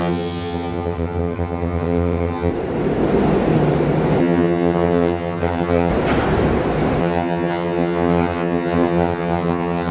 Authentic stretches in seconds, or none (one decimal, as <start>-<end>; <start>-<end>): 2.5-4.2; 5.9-7.0